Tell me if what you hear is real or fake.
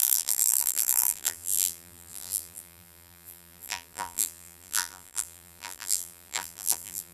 fake